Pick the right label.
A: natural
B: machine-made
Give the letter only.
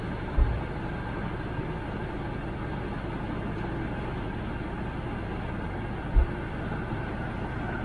A